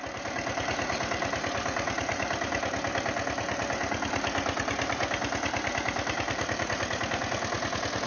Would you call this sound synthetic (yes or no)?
yes